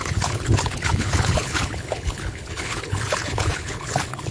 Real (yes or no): no